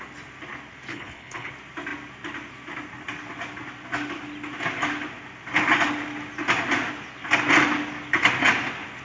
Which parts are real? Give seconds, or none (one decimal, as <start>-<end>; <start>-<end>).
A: 0.0-0.9; 1.5-9.0